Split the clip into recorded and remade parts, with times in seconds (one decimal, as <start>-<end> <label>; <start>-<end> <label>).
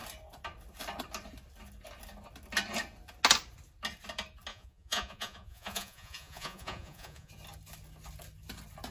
0.0-4.5 recorded; 4.5-7.3 remade; 7.3-8.9 recorded